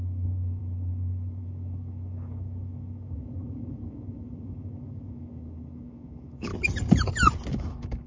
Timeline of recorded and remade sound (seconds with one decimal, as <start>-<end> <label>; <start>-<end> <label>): 0.0-6.5 remade; 6.5-7.5 recorded; 7.5-8.1 remade